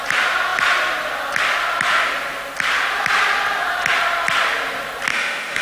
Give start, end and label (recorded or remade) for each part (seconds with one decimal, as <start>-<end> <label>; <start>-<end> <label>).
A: 0.0-5.1 recorded; 5.1-5.6 remade